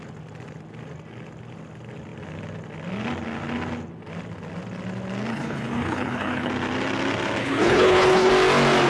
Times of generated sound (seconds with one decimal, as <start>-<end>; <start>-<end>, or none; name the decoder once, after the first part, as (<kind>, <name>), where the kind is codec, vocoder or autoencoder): 5.3-6.5 (codec, HILCodec); 7.4-8.3